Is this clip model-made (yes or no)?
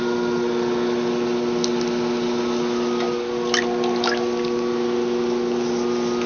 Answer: no